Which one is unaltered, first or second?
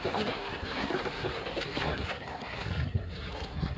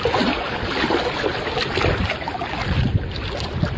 second